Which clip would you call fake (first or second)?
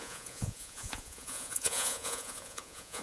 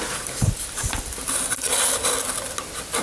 first